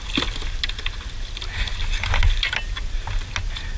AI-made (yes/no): no